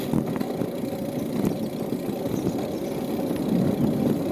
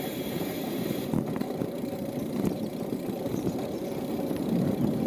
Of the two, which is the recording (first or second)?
first